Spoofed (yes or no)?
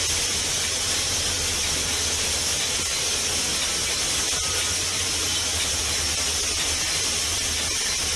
no